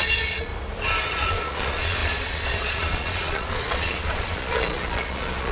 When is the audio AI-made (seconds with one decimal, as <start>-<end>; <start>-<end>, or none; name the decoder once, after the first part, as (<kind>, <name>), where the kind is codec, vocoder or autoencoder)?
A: 0.0-0.5 (vocoder, Vocos); 1.0-5.5